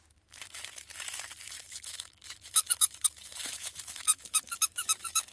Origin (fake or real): fake